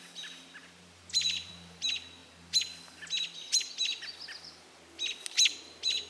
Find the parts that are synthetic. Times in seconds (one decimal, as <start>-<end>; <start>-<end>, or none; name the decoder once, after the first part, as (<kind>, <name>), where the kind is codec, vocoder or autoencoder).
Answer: 0.6-1.5 (vocoder, BigVGAN v2)